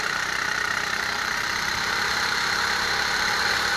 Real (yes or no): no